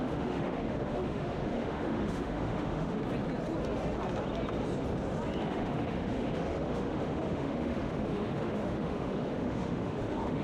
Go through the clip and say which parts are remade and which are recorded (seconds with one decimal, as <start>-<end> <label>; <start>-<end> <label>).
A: 0.0-3.0 remade; 3.0-5.4 recorded; 5.4-10.4 remade